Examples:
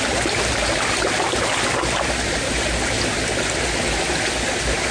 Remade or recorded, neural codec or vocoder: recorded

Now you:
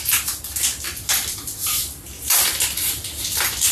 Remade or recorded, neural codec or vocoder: recorded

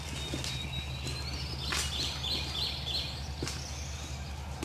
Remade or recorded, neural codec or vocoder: recorded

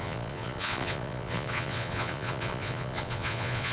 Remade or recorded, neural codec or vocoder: remade, vocoder, Vocos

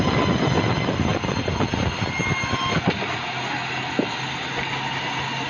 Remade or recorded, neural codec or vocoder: recorded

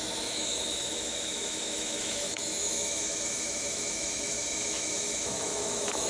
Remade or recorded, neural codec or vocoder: remade, autoencoder, DAC-VAE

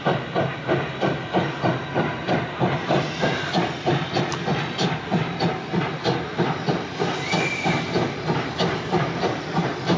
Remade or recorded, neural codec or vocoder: recorded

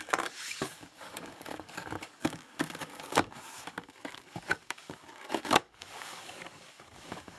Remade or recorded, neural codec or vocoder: remade, codec, DAC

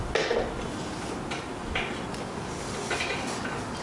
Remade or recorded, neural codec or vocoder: recorded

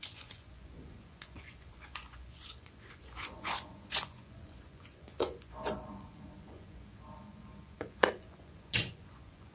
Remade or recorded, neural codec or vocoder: remade, vocoder, Vocos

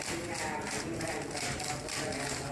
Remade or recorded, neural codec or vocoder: recorded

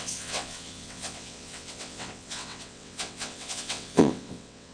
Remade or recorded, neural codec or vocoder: remade, vocoder, WaveNeXt